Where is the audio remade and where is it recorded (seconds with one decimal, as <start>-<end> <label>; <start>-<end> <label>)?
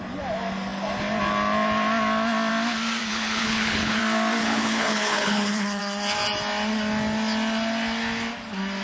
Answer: 0.0-3.0 recorded; 3.0-4.0 remade; 4.0-4.4 recorded; 4.4-5.8 remade; 5.8-8.8 recorded